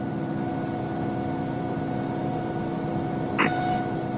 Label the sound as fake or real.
real